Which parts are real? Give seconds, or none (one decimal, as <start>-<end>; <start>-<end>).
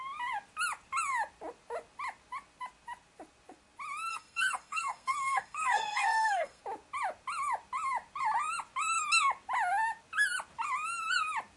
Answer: 0.0-4.1; 6.6-11.6